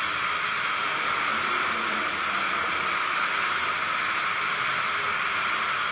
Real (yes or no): yes